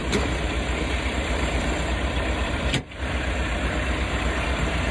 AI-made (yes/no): yes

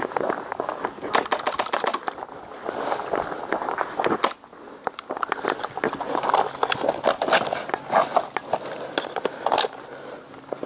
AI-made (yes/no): no